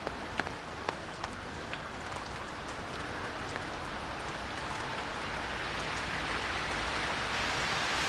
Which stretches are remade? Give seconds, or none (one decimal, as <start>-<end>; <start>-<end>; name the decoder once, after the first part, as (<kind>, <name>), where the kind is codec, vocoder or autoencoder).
0.6-2.0 (codec, SNAC)